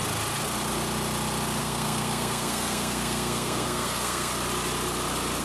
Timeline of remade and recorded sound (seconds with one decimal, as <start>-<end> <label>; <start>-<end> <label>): 0.0-1.6 recorded; 1.6-4.3 remade; 4.3-5.4 recorded